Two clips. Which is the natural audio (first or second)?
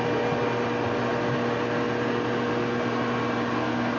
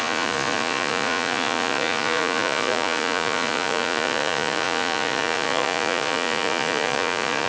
first